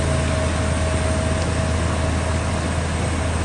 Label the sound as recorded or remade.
recorded